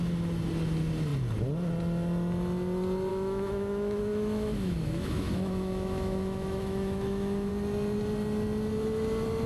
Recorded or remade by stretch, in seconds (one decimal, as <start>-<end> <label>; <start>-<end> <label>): 0.0-3.1 recorded; 3.1-7.5 remade; 7.5-9.5 recorded